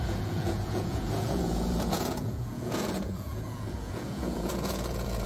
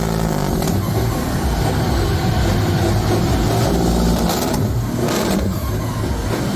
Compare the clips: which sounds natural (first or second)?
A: second